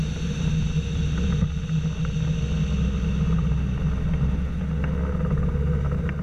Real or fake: real